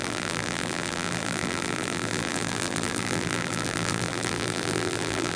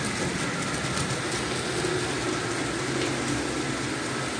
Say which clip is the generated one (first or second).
first